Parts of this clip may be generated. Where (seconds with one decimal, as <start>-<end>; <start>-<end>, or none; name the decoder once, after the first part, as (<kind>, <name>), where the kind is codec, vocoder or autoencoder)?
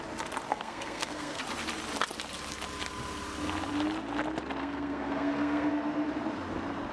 0.5-1.4 (codec, SNAC); 4.6-5.7